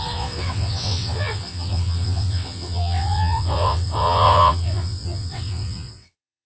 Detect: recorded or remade remade